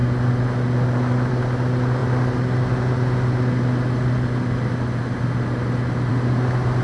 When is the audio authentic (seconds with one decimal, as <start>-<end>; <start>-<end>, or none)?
0.0-6.8